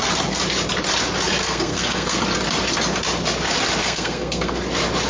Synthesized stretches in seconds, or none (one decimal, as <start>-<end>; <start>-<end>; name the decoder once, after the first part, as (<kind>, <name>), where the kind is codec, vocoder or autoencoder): 1.4-2.2 (codec, SNAC); 3.8-4.6